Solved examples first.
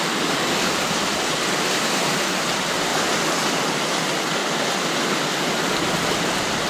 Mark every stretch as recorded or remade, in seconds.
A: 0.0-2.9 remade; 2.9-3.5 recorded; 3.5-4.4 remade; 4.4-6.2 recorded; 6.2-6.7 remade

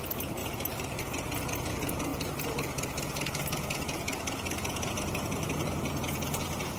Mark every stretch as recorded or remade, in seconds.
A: 0.0-0.4 remade; 0.4-1.0 recorded; 1.0-6.8 remade

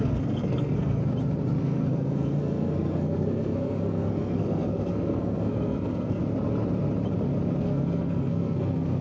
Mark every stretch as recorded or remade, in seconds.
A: 0.0-1.0 remade; 1.0-1.6 recorded; 1.6-6.2 remade; 6.2-7.6 recorded; 7.6-9.0 remade

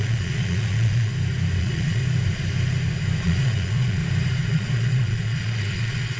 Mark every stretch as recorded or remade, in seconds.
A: 0.0-1.1 remade; 1.1-1.6 recorded; 1.6-2.0 remade; 2.0-3.2 recorded; 3.2-4.0 remade; 4.0-4.5 recorded; 4.5-6.2 remade